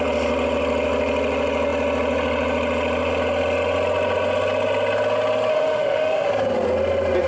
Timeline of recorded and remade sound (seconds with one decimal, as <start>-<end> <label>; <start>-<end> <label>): 0.0-5.5 recorded; 5.5-6.3 remade; 6.3-7.3 recorded